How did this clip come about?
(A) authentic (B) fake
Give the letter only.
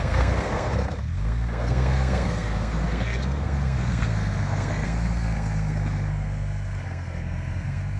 B